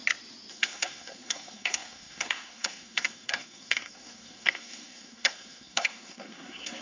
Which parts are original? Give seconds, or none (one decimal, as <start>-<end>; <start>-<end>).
0.0-0.5